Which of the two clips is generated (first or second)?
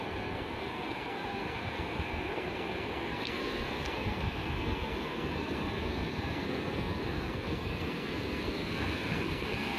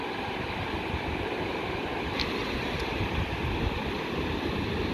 first